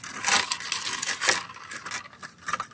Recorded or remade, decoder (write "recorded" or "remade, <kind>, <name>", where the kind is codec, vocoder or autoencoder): recorded